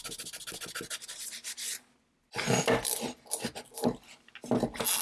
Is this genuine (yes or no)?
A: yes